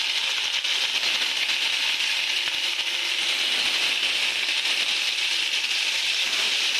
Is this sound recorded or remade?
recorded